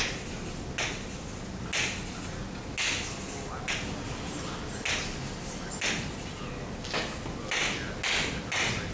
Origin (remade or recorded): recorded